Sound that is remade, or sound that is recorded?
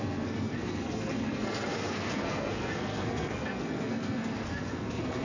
remade